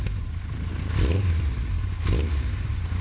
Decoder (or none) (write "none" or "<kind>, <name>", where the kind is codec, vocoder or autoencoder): none